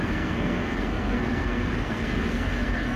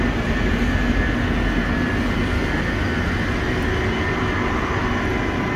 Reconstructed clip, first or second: first